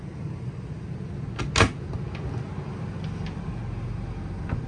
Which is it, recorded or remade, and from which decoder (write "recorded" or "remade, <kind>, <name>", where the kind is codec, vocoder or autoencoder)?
recorded